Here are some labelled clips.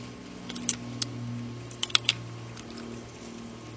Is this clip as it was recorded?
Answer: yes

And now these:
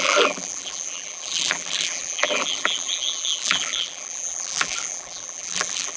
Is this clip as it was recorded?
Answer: no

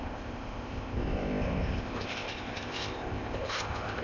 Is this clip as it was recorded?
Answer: no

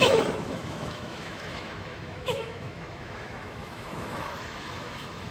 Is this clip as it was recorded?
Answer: no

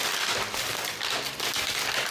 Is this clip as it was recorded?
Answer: no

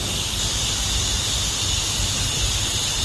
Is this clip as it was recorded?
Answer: yes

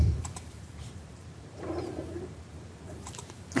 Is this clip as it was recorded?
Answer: no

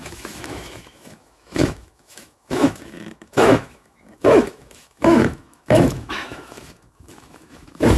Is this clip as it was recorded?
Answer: no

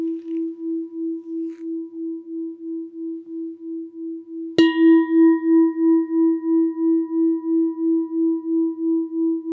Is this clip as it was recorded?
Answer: yes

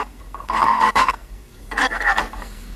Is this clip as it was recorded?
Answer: no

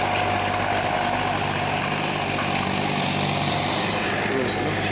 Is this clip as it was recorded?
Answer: yes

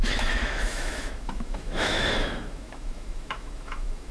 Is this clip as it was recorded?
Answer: no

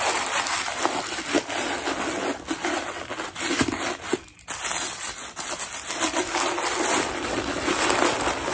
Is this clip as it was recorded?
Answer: yes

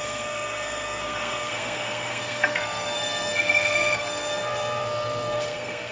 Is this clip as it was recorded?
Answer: no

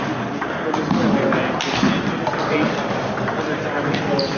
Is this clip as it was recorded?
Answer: yes